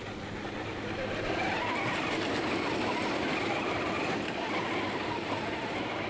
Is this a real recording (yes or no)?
yes